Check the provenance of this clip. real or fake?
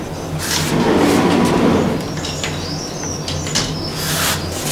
real